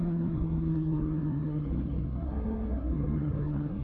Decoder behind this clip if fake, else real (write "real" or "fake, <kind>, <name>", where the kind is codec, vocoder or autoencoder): fake, codec, SNAC